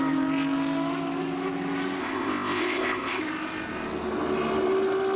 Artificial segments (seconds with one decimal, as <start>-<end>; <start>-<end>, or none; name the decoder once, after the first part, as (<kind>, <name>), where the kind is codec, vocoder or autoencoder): 2.0-3.2 (codec, ZipCodec)